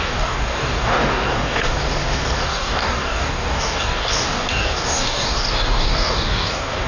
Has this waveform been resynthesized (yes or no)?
yes